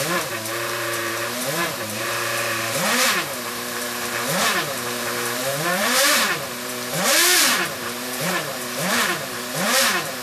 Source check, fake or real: fake